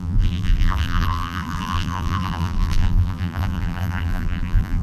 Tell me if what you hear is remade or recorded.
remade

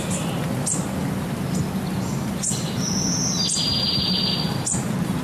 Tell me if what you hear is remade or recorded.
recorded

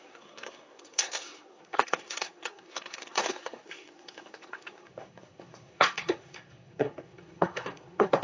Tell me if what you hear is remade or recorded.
remade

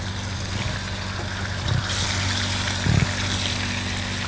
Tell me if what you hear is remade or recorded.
recorded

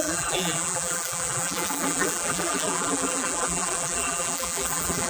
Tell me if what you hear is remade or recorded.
remade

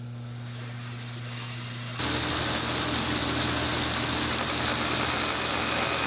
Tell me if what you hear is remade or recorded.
recorded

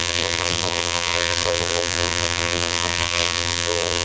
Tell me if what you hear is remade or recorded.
remade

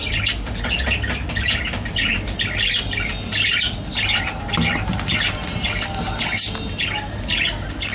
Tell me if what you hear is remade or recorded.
recorded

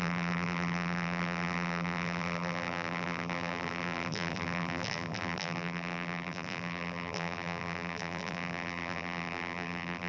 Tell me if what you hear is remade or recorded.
remade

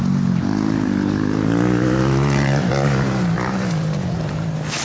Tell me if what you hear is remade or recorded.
recorded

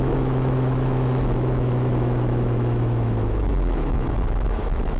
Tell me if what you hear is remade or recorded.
remade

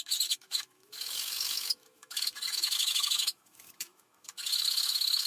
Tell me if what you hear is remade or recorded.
remade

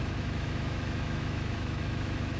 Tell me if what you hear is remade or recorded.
remade